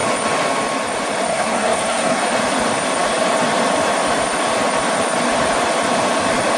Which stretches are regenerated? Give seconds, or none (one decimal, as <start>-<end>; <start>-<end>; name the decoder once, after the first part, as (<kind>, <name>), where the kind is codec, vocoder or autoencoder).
1.3-2.2 (codec, SNAC)